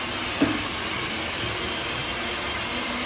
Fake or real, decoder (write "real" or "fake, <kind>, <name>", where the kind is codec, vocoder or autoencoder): real